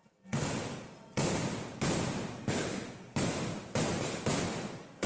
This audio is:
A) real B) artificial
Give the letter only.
A